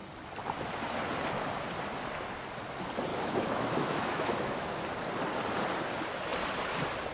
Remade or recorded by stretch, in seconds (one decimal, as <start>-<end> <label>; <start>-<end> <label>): 0.0-3.1 recorded; 3.1-4.8 remade; 4.8-7.1 recorded